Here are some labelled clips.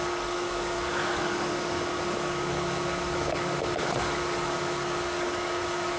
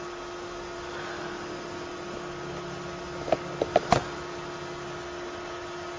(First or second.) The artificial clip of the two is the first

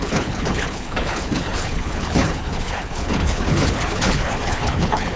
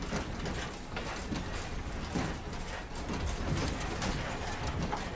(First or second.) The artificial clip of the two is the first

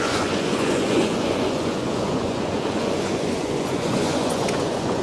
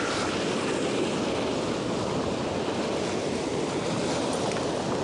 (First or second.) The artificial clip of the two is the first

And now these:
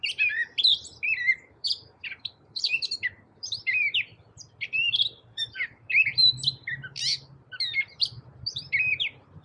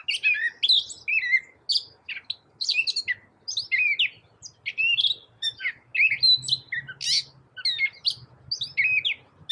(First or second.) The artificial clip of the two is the first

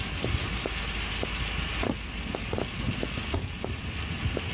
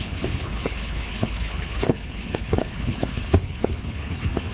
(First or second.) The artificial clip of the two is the second